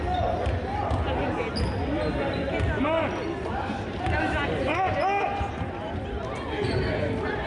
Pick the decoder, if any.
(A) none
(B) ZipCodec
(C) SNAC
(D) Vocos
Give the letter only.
A